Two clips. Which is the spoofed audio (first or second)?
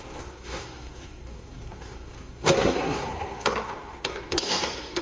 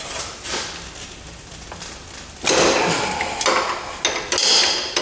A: first